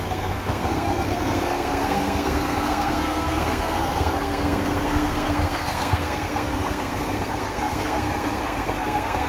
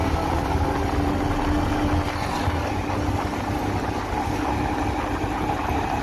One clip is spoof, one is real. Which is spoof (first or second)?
first